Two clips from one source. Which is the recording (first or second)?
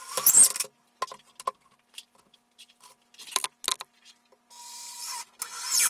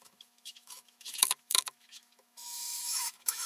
first